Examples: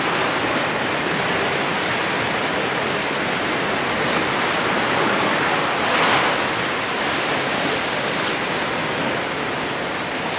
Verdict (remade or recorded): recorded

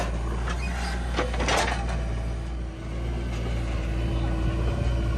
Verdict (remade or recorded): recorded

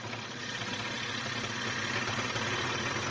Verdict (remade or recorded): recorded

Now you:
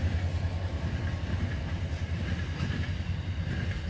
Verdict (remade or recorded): recorded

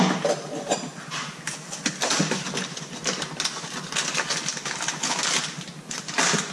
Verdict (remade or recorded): recorded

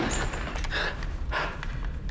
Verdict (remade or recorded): recorded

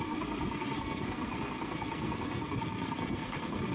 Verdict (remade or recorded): remade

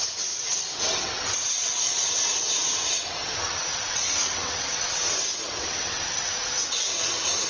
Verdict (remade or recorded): remade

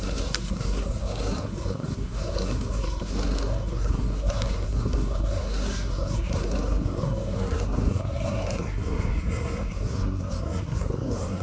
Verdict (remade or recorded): remade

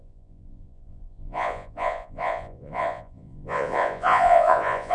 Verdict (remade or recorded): remade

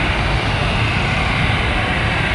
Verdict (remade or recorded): recorded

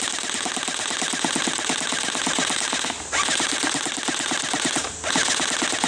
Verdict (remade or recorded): recorded